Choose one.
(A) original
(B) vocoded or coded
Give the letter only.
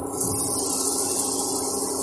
B